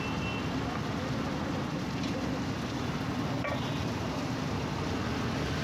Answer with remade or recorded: recorded